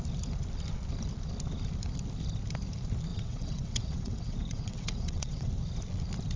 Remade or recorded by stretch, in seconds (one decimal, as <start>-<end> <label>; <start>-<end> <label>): 0.0-3.1 recorded; 3.1-5.5 remade; 5.5-6.4 recorded